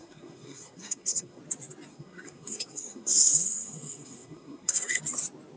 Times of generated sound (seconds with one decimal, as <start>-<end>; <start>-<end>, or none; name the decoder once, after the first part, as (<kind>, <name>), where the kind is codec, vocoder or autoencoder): 0.0-1.4 (codec, SNAC); 1.9-5.0